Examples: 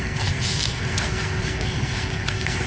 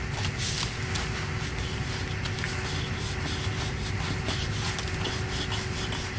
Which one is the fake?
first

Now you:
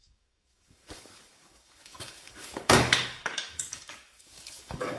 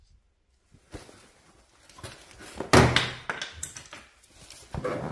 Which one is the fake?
first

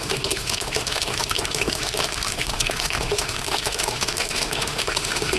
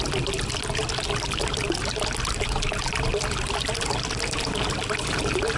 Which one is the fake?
first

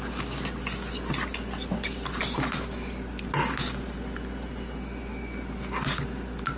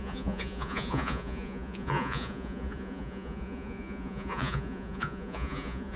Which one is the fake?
second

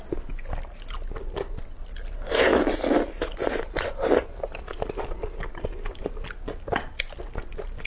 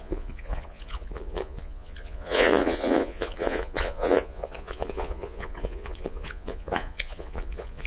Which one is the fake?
second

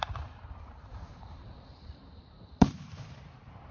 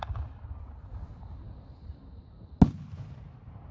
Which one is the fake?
first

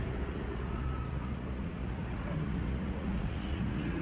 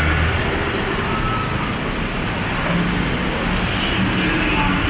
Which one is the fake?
first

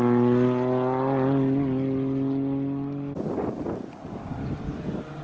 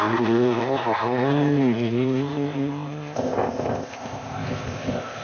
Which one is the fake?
second